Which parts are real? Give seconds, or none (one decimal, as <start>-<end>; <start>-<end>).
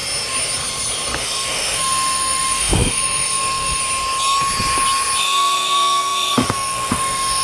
0.0-1.2; 3.8-5.2